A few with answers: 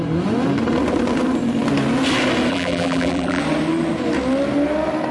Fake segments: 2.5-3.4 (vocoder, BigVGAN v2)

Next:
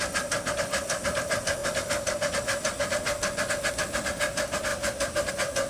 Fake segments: 4.7-5.3 (vocoder, BigVGAN v2)

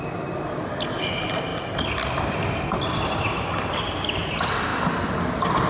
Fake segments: none

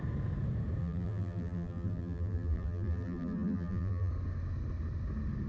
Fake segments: 0.8-4.1 (vocoder, BigVGAN v2)

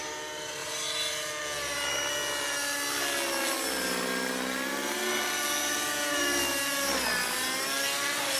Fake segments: 0.6-1.3 (vocoder, BigVGAN v2); 5.6-6.2

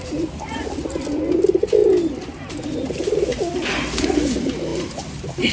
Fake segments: 0.0-1.8 (vocoder, BigVGAN v2); 2.5-3.3; 4.0-5.5

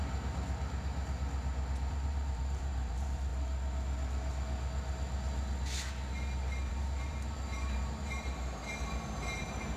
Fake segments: 1.9-3.3 (vocoder, BigVGAN v2); 6.7-9.8

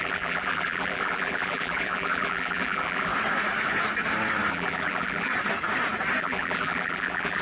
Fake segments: 0.0-3.1 (vocoder, BigVGAN v2); 4.5-5.3; 6.2-7.4